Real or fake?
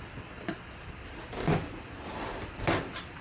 real